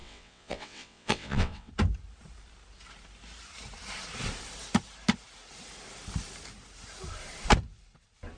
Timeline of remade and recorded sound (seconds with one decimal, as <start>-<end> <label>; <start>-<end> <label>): 0.0-1.7 remade; 1.7-8.4 recorded